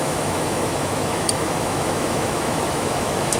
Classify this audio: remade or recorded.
remade